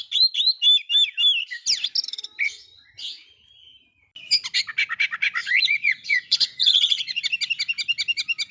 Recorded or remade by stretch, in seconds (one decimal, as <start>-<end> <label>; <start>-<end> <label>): 0.0-5.4 recorded; 5.4-7.2 remade; 7.2-8.5 recorded